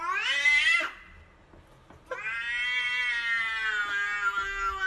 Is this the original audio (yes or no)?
yes